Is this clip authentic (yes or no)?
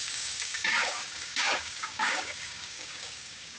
no